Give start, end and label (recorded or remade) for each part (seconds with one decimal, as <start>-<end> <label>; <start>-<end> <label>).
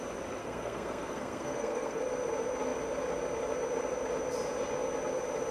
0.0-0.4 recorded; 0.4-2.0 remade; 2.0-5.5 recorded